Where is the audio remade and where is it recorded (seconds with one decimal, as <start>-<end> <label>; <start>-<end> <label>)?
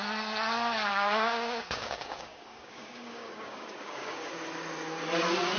0.0-0.9 recorded; 0.9-4.3 remade; 4.3-5.6 recorded